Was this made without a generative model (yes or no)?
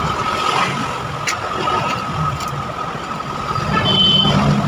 yes